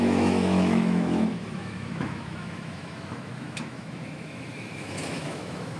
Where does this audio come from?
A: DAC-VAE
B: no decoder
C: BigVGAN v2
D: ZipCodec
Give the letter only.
A